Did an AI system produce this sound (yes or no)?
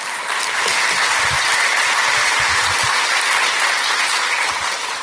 no